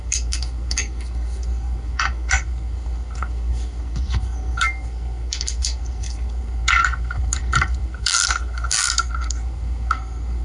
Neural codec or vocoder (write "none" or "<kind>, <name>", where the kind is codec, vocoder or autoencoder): codec, SNAC